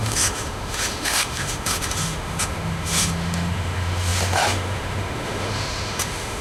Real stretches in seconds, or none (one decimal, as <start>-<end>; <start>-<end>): none